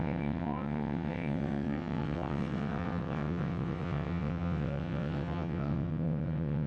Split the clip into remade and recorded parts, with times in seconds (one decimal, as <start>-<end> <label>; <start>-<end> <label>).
0.0-6.7 remade

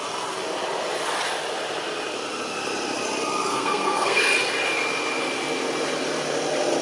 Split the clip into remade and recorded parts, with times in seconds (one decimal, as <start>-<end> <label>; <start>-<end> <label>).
0.0-3.5 recorded; 3.5-4.2 remade; 4.2-6.8 recorded

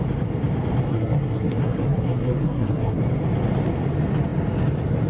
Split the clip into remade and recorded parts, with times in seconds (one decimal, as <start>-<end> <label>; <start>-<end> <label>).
0.0-0.9 recorded; 0.9-3.0 remade; 3.0-5.1 recorded

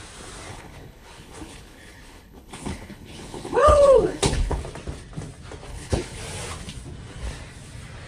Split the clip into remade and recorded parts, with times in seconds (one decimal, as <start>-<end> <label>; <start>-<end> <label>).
0.0-0.5 recorded; 0.5-4.6 remade; 4.6-5.7 recorded; 5.7-6.2 remade; 6.2-8.1 recorded

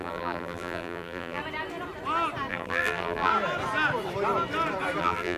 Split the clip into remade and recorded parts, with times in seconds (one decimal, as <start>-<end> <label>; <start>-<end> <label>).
0.0-1.4 remade; 1.4-2.5 recorded; 2.5-3.3 remade; 3.3-5.0 recorded; 5.0-5.4 remade

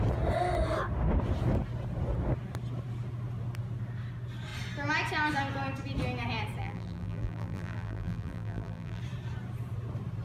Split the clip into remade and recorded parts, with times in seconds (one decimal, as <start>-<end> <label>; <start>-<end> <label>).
0.0-6.6 recorded; 6.6-9.0 remade; 9.0-10.2 recorded

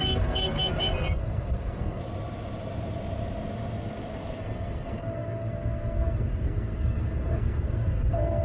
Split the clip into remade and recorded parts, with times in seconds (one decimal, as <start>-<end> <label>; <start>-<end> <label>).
0.0-2.0 remade; 2.0-4.4 recorded; 4.4-8.4 remade